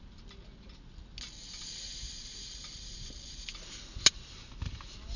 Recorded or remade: recorded